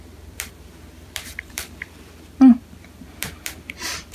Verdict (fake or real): fake